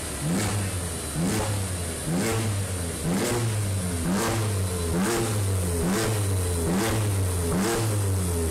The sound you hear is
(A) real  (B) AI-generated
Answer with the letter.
A